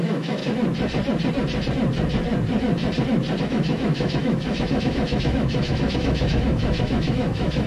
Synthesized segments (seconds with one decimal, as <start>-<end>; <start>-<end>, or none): 0.0-0.4; 3.4-7.7